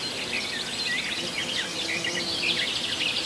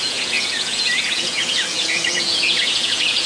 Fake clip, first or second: second